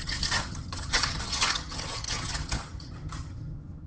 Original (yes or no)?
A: no